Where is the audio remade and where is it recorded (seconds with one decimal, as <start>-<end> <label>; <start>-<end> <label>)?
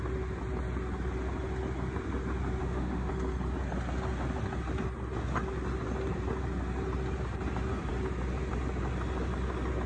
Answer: 0.0-2.6 recorded; 2.6-3.1 remade; 3.1-9.9 recorded